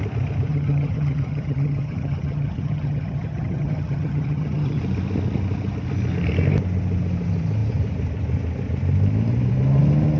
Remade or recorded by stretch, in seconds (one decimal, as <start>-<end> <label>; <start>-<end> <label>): 0.0-0.5 recorded; 0.5-4.8 remade; 4.8-10.2 recorded